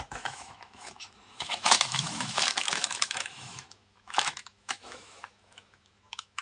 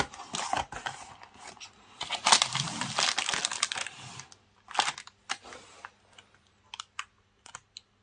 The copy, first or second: first